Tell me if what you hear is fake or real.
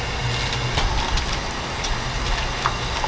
real